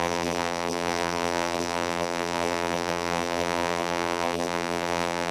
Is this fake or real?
fake